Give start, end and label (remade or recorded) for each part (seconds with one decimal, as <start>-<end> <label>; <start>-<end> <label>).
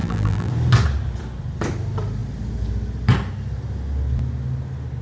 0.0-0.5 remade; 0.5-5.0 recorded